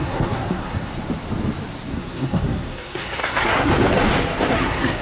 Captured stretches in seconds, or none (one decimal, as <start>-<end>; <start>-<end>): 0.9-1.9; 3.7-4.5